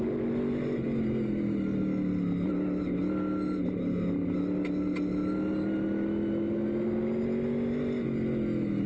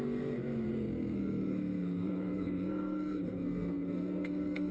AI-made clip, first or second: second